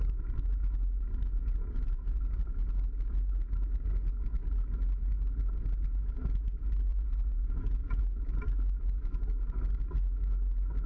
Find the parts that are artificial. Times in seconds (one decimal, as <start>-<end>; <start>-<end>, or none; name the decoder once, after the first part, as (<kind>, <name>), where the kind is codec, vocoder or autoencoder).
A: 1.3-2.2 (vocoder, Vocos); 6.9-8.0